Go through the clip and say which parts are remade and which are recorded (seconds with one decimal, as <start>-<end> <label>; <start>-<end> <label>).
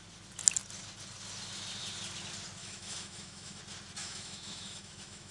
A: 0.0-2.6 recorded; 2.6-3.6 remade; 3.6-4.0 recorded; 4.0-5.3 remade